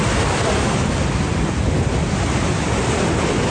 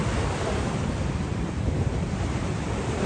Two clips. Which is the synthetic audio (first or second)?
second